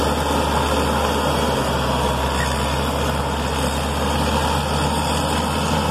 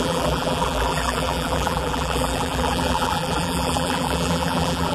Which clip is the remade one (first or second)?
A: second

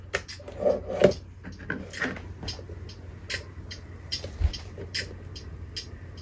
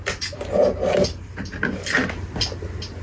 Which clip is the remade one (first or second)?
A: second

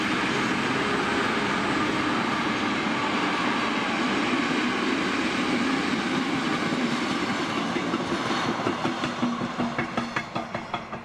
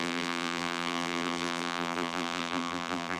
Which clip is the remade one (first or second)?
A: second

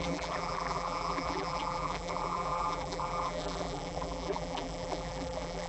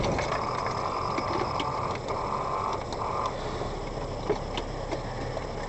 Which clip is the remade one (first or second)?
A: first